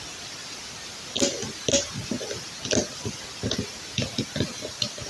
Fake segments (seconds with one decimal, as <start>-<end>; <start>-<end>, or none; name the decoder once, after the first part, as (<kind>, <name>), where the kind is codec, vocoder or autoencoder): none